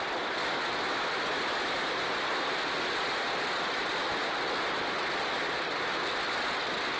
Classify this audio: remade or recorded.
recorded